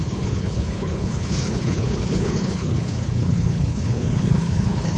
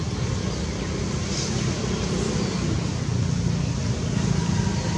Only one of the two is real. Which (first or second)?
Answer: second